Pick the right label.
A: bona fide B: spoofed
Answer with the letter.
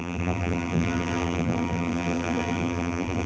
B